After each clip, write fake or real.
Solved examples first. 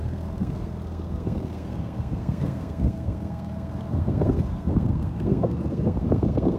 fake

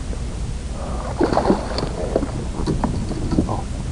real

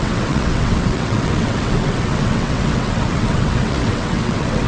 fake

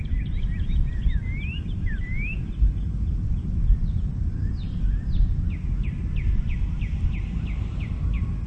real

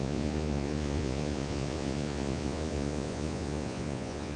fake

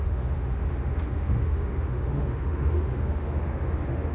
fake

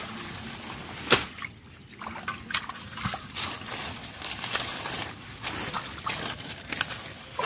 real